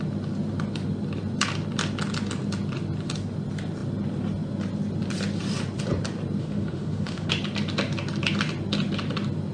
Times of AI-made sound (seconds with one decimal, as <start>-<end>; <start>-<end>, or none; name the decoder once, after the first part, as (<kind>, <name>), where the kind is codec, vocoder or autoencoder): 6.4-7.3 (autoencoder, DAC-VAE)